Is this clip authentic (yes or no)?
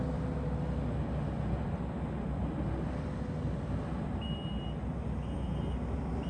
yes